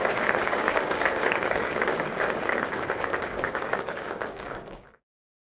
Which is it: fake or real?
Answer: fake